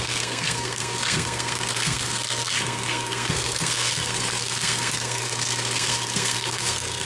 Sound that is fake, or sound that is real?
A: fake